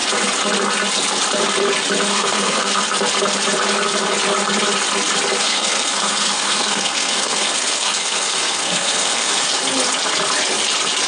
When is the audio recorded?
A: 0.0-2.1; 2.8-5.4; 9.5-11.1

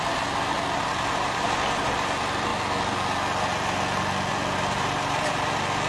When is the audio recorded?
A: 2.5-4.3

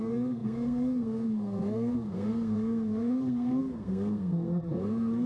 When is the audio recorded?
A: none

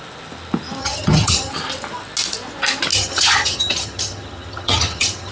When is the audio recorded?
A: 0.0-0.8; 1.5-2.9

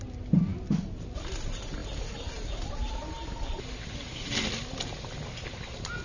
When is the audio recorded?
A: 0.0-6.0

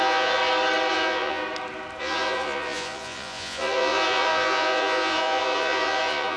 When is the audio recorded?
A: 0.4-0.9; 1.4-2.0